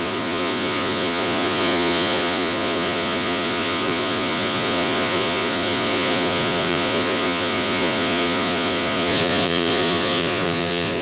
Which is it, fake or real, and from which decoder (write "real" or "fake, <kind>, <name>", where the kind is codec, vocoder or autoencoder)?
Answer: fake, vocoder, Vocos